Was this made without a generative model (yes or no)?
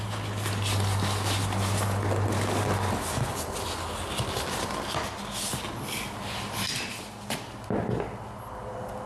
yes